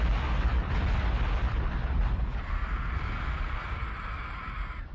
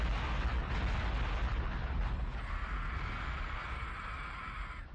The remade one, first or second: first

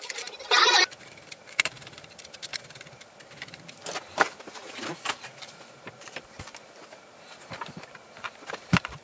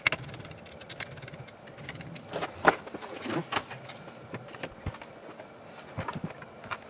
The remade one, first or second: first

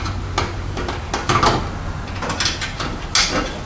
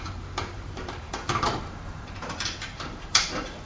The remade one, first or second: second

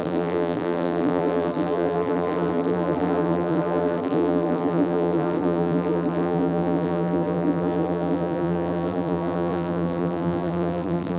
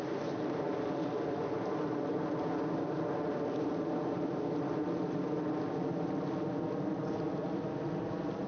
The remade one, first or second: first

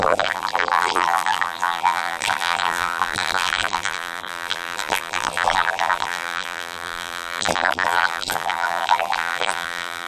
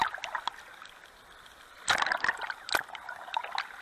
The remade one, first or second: first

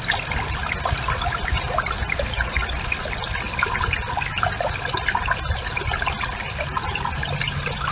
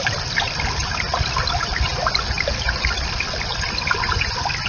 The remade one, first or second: second